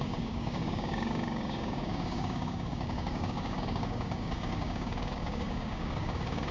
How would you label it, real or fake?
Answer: fake